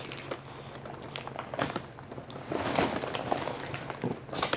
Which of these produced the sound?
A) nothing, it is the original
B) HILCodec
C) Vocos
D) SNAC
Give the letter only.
A